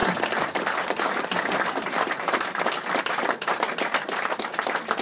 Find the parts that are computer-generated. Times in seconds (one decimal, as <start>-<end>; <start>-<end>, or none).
none